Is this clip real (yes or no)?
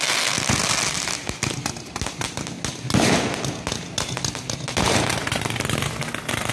yes